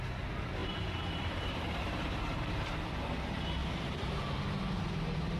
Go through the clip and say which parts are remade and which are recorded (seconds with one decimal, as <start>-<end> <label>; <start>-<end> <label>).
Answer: 0.0-0.6 recorded; 0.6-2.4 remade; 2.4-3.6 recorded; 3.6-4.2 remade; 4.2-5.4 recorded